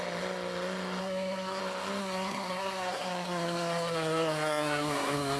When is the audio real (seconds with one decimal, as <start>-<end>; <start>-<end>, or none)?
0.0-1.0; 1.6-2.0